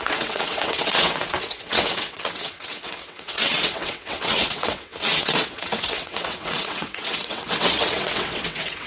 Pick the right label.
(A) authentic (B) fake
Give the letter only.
B